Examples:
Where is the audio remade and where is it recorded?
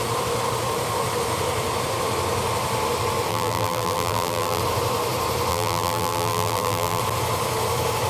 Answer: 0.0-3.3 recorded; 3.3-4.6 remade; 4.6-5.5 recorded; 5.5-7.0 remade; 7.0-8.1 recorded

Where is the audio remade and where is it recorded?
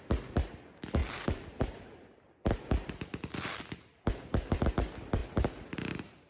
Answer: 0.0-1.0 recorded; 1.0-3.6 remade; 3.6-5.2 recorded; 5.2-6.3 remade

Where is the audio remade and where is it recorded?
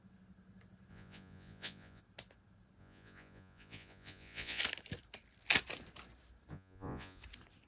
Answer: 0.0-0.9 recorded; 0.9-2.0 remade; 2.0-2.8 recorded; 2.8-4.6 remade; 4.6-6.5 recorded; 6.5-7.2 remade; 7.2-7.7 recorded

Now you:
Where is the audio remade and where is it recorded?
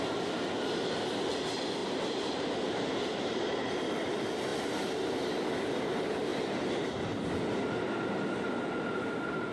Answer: 0.0-1.8 recorded; 1.8-3.7 remade; 3.7-6.3 recorded; 6.3-7.0 remade; 7.0-9.5 recorded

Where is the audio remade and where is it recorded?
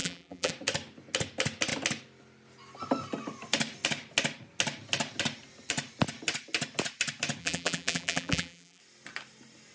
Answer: 0.0-0.5 remade; 0.5-7.4 recorded; 7.4-8.8 remade; 8.8-9.7 recorded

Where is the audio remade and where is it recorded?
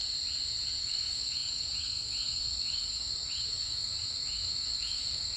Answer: 0.0-0.8 recorded; 0.8-5.4 remade